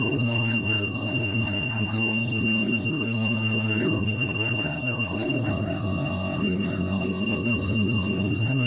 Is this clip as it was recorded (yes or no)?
no